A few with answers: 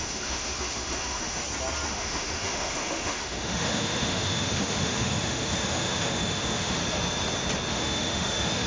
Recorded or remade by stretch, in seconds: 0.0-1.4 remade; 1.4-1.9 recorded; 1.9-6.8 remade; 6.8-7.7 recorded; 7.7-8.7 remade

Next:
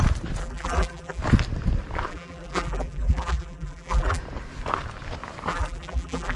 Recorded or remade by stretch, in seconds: 0.0-0.4 recorded; 0.4-1.2 remade; 1.2-2.1 recorded; 2.1-4.2 remade; 4.2-5.5 recorded; 5.5-6.4 remade

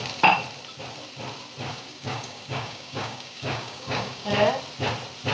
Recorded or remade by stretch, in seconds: 0.0-1.7 recorded; 1.7-4.3 remade; 4.3-5.3 recorded